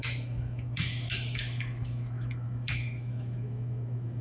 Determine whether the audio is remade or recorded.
remade